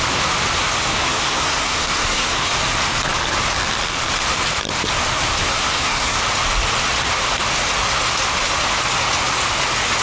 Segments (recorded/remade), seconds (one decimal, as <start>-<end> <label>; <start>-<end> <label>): 0.0-1.0 recorded; 1.0-2.5 remade; 2.5-5.4 recorded; 5.4-6.2 remade; 6.2-10.0 recorded